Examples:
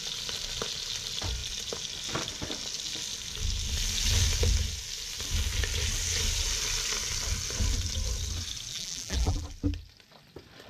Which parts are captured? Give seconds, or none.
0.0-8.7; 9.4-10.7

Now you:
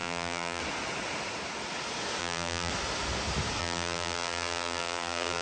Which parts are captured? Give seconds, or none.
0.6-2.2; 2.7-3.6

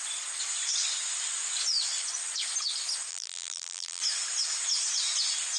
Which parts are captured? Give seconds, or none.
0.0-3.1; 4.0-5.6

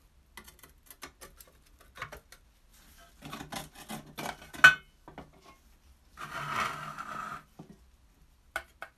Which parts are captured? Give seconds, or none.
0.0-9.0

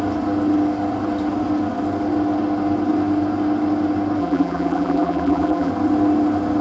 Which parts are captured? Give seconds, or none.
0.0-4.2; 5.7-6.6

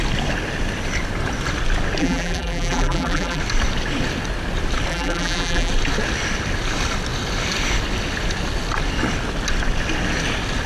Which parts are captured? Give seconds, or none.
0.0-2.0; 3.4-4.9; 5.7-10.7

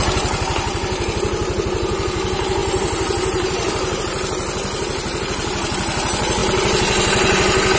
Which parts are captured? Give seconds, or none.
0.0-2.6; 4.0-7.8